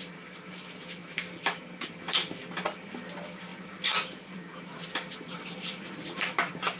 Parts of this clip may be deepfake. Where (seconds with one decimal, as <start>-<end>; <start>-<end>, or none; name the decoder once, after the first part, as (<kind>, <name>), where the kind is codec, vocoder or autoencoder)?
1.0-1.9 (vocoder, BigVGAN v2); 3.5-6.2